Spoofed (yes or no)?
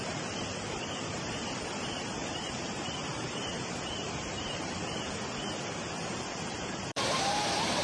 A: yes